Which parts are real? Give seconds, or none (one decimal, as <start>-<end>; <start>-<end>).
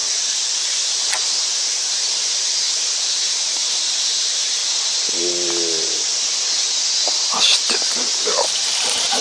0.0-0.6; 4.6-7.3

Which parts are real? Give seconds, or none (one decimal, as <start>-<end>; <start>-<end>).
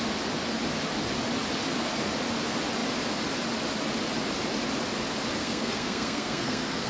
0.0-5.4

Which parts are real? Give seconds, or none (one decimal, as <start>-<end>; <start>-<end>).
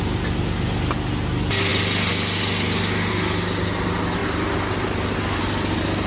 0.0-6.1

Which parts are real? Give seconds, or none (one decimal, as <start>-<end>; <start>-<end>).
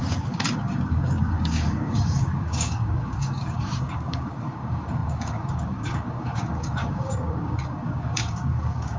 none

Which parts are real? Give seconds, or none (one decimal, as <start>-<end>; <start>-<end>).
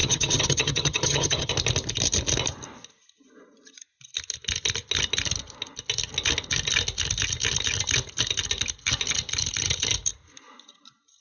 1.5-11.2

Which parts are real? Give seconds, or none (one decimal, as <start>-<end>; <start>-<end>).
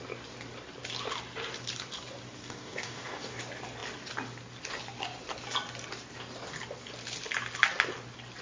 0.0-2.4; 3.4-8.4